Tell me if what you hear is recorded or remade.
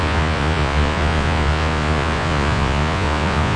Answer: remade